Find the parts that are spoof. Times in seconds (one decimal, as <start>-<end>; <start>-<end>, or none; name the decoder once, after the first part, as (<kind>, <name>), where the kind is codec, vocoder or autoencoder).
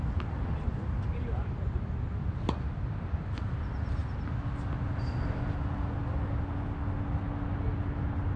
1.1-1.9 (vocoder, BigVGAN v2)